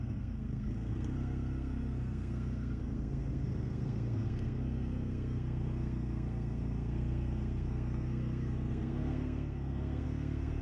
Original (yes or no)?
no